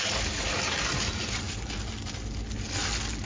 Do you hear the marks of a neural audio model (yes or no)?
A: no